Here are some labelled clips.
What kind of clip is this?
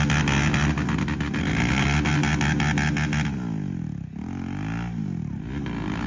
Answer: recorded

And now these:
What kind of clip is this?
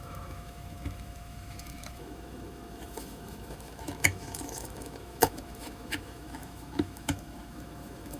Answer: remade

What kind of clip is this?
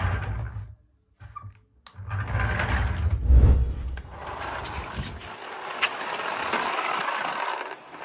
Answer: recorded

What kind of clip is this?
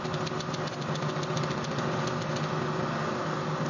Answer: recorded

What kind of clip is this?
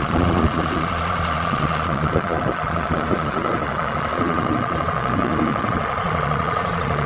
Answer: remade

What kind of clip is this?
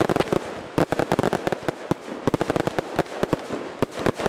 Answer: recorded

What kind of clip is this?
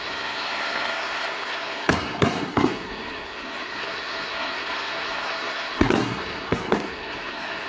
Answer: remade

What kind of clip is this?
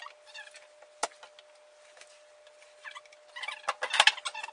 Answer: recorded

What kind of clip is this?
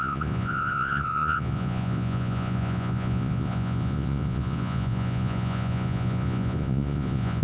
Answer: remade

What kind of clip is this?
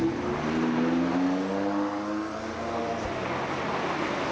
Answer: recorded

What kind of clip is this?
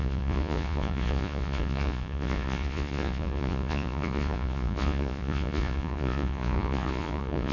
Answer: remade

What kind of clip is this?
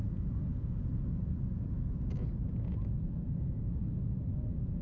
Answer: remade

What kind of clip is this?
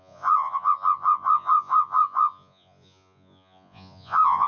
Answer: remade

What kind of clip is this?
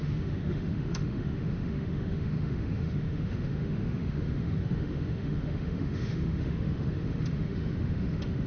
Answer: remade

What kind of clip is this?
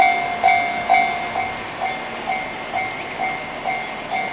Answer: recorded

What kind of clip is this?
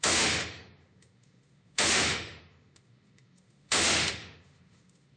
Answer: remade